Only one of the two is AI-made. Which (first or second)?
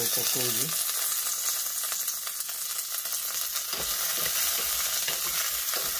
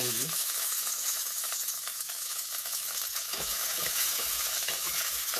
second